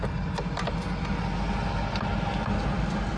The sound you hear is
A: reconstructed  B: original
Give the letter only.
B